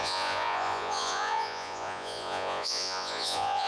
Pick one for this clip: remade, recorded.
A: remade